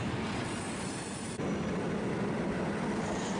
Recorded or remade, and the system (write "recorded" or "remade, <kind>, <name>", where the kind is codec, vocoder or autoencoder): recorded